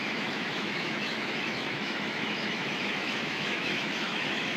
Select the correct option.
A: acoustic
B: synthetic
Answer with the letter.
B